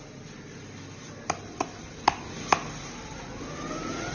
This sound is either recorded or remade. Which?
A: recorded